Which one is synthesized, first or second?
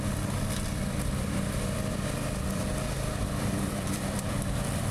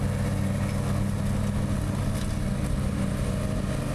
first